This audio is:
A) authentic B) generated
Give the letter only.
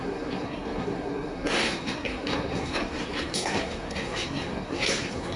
B